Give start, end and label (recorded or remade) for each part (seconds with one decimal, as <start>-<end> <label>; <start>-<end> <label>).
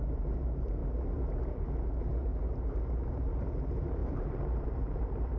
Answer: 0.0-0.8 remade; 0.8-1.5 recorded; 1.5-5.4 remade